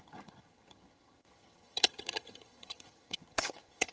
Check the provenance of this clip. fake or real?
fake